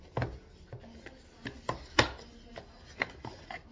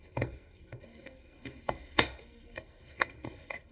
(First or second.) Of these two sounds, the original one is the first